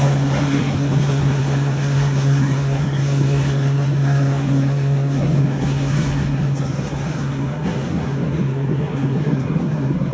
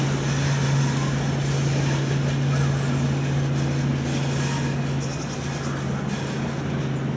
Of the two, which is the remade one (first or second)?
first